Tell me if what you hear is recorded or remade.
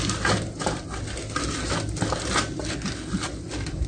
recorded